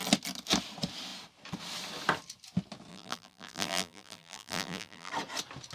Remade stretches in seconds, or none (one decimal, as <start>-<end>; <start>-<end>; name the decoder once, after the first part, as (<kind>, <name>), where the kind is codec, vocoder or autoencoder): 2.9-5.1 (vocoder, BigVGAN v2)